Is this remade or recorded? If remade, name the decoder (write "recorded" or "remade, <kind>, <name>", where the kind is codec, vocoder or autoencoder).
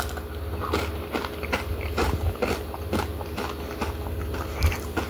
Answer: recorded